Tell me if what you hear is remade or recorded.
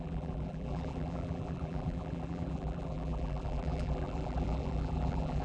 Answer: remade